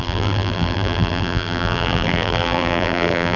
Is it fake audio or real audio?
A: fake